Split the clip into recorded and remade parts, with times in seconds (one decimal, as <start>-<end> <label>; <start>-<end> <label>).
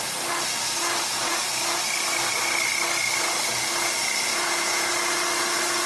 0.0-4.3 recorded; 4.3-4.9 remade; 4.9-5.9 recorded